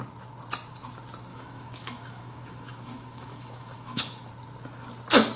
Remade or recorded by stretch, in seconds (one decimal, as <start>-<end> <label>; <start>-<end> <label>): 0.0-1.3 recorded; 1.3-4.3 remade; 4.3-5.4 recorded